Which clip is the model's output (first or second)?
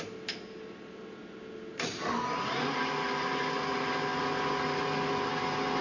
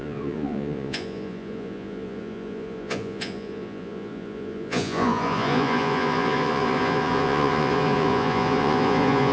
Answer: second